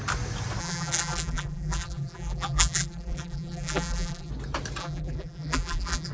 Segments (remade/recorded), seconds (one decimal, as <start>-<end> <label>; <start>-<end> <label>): 0.0-0.6 recorded; 0.6-4.3 remade; 4.3-4.8 recorded; 4.8-6.1 remade